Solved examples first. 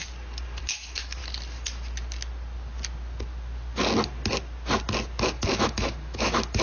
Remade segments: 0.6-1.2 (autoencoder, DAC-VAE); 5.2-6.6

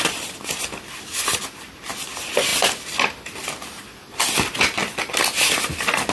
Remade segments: none

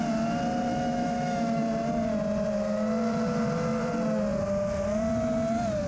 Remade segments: 0.7-1.6 (autoencoder, DAC-VAE)

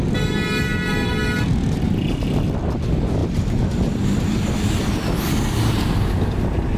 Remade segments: none

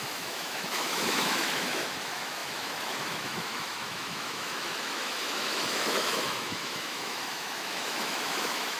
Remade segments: 0.0-8.8 (autoencoder, DAC-VAE)

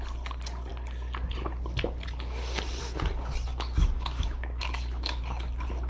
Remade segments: 3.5-5.2 (autoencoder, DAC-VAE)